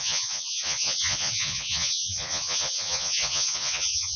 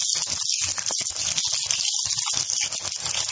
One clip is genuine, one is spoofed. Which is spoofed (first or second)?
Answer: first